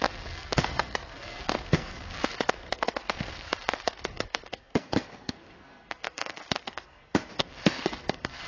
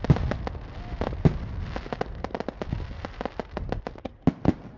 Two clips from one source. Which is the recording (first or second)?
second